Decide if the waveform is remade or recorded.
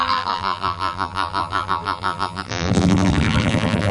remade